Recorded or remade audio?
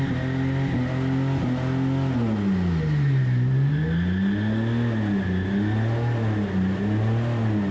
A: recorded